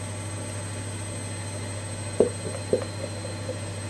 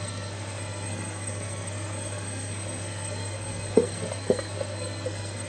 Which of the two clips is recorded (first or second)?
first